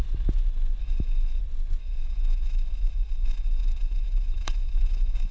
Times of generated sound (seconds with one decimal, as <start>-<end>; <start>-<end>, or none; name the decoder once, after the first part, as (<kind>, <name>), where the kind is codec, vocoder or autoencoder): 0.8-1.4 (autoencoder, DAC-VAE); 1.8-5.3